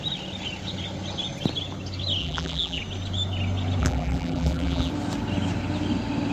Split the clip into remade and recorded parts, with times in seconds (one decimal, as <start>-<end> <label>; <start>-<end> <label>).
0.0-2.2 recorded; 2.2-2.8 remade; 2.8-3.8 recorded; 3.8-4.9 remade; 4.9-6.3 recorded